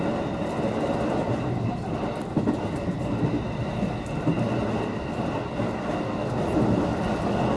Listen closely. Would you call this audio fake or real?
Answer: real